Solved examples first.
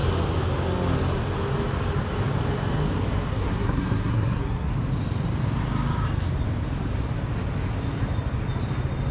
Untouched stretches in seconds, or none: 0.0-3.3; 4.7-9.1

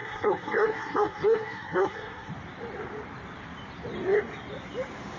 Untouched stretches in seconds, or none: 2.3-5.2